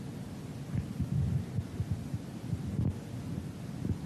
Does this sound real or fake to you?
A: real